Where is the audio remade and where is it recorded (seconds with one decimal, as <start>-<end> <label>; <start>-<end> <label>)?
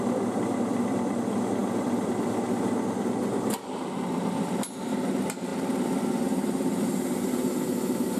0.0-1.6 recorded; 1.6-2.1 remade; 2.1-8.2 recorded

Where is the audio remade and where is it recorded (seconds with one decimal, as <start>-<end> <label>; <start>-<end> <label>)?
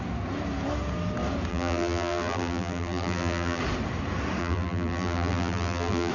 0.0-1.5 recorded; 1.5-3.6 remade; 3.6-4.4 recorded; 4.4-6.1 remade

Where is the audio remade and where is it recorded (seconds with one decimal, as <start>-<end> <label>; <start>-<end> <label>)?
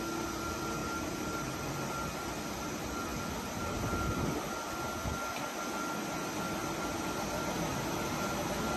0.0-0.8 recorded; 0.8-1.6 remade; 1.6-8.8 recorded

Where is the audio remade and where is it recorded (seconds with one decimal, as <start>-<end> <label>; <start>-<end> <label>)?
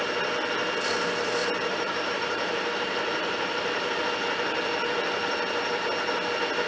0.0-1.4 recorded; 1.4-4.0 remade; 4.0-6.7 recorded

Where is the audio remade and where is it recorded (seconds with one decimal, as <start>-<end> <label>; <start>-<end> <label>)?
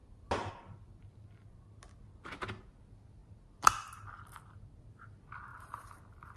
0.0-5.5 recorded; 5.5-6.0 remade; 6.0-6.4 recorded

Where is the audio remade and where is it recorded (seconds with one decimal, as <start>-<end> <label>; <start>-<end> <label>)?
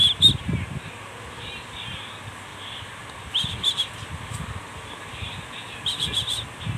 0.0-2.5 recorded; 2.5-5.4 remade; 5.4-6.8 recorded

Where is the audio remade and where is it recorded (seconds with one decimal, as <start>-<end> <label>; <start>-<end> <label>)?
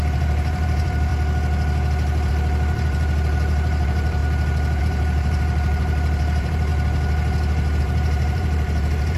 0.0-1.1 remade; 1.1-2.3 recorded; 2.3-4.2 remade; 4.2-4.8 recorded; 4.8-6.7 remade; 6.7-7.8 recorded; 7.8-9.2 remade